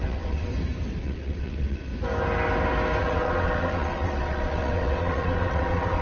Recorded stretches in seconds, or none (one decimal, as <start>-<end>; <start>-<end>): 0.5-1.0; 1.9-3.0